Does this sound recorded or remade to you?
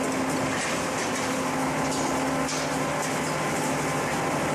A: recorded